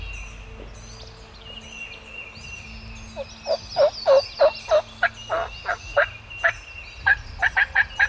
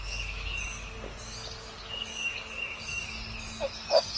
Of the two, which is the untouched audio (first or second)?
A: first